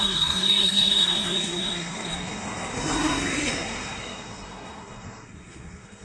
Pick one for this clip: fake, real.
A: fake